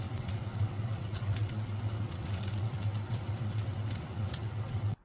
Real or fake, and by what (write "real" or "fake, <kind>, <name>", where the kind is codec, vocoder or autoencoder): fake, vocoder, WaveNeXt